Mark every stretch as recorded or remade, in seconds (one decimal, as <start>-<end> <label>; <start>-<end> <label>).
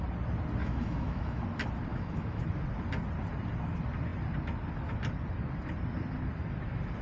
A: 0.0-0.6 recorded; 0.6-1.4 remade; 1.4-1.9 recorded; 1.9-2.4 remade; 2.4-7.0 recorded